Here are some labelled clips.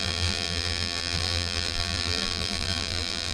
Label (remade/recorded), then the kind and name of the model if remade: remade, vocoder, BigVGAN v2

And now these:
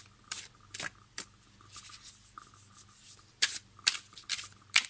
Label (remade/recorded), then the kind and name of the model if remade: remade, vocoder, BigVGAN v2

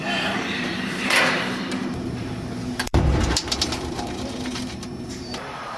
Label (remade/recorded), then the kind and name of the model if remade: remade, vocoder, BigVGAN v2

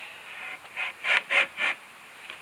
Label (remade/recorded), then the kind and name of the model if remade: remade, vocoder, BigVGAN v2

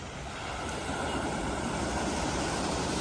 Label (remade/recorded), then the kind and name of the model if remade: remade, vocoder, BigVGAN v2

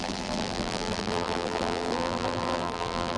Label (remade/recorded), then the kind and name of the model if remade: remade, vocoder, BigVGAN v2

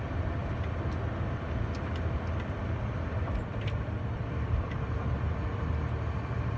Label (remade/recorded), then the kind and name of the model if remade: remade, vocoder, BigVGAN v2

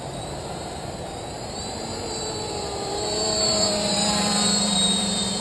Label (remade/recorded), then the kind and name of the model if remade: remade, vocoder, BigVGAN v2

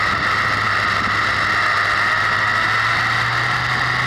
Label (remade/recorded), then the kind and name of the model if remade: recorded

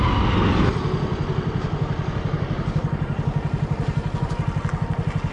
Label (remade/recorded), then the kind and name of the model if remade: recorded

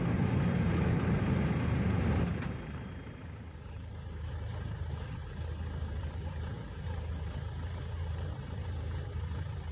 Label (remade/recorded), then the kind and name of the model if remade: remade, vocoder, BigVGAN v2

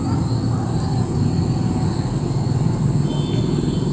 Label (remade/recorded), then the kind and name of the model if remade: recorded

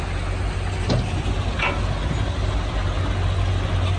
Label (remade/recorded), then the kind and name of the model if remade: recorded